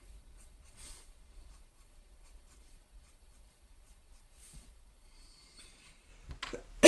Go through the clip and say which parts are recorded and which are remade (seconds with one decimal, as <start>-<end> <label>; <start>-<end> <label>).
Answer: 0.0-6.1 remade; 6.1-6.9 recorded